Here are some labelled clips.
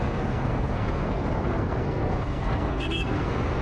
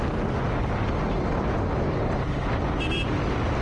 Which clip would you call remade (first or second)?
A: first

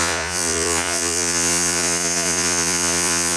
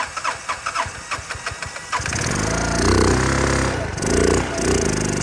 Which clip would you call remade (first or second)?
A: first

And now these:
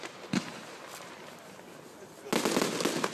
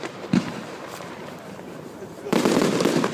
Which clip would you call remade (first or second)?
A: second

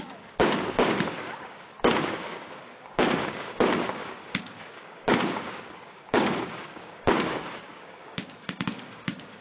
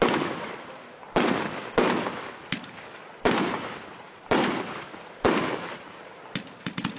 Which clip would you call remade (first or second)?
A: first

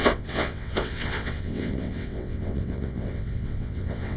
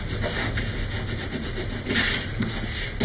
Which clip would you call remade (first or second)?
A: first